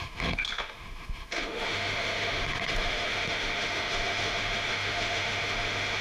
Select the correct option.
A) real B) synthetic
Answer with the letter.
B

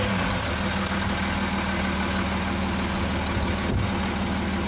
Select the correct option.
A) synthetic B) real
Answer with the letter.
B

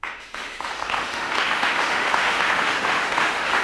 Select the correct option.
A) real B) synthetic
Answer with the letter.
B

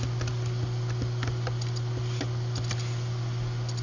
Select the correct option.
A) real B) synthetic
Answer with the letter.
A